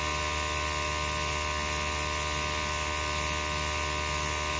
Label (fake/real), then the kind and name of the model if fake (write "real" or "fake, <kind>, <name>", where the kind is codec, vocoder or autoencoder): real